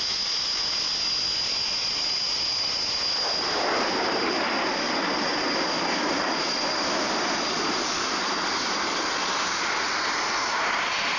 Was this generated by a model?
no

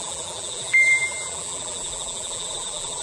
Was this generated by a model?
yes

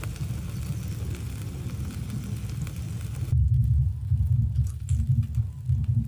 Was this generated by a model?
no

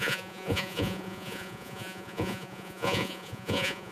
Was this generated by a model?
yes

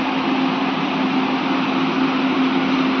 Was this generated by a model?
no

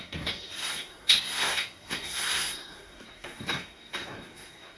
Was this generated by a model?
yes